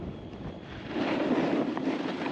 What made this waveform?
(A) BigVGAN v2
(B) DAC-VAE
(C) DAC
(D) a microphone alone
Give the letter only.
A